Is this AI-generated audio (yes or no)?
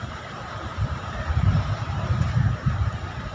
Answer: yes